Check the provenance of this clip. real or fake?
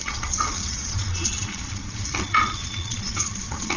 fake